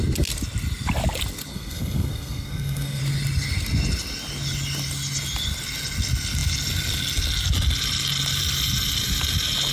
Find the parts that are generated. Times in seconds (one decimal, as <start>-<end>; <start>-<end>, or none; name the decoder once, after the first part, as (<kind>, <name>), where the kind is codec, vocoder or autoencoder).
1.5-3.0 (codec, SNAC)